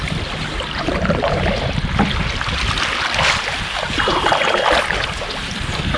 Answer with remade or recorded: recorded